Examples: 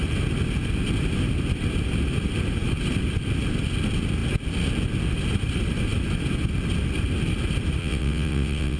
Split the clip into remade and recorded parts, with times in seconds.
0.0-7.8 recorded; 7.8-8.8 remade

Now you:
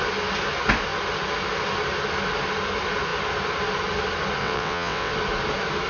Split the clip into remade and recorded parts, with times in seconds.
0.0-4.4 recorded; 4.4-5.1 remade; 5.1-5.9 recorded

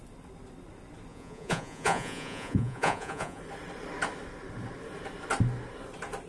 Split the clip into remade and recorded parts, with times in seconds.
0.0-1.1 recorded; 1.1-3.4 remade; 3.4-6.3 recorded